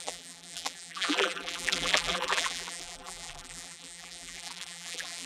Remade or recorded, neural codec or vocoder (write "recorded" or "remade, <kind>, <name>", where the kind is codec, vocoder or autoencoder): remade, vocoder, BigVGAN v2